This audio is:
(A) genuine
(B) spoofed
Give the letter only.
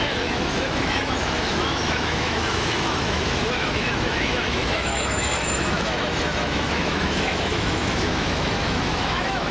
B